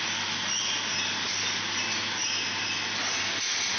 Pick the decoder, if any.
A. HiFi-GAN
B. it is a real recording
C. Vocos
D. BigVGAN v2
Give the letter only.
B